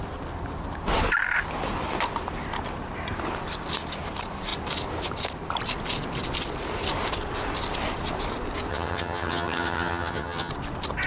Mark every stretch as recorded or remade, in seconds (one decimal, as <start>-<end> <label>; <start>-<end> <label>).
0.0-8.7 recorded; 8.7-10.5 remade; 10.5-11.1 recorded